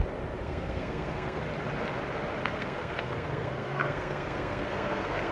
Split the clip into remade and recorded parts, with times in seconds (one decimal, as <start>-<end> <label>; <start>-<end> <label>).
0.0-0.4 recorded; 0.4-1.4 remade; 1.4-2.4 recorded; 2.4-5.3 remade